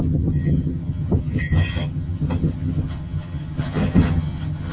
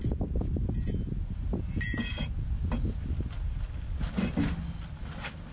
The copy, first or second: first